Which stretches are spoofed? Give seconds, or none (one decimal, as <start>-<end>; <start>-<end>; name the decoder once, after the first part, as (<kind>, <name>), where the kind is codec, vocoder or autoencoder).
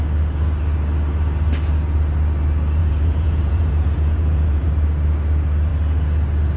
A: 2.8-4.7 (vocoder, Vocos)